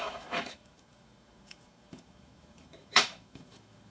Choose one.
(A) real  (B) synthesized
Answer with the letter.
B